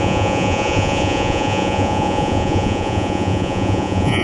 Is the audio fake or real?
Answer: fake